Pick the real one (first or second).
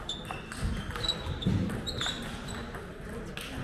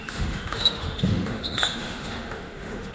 first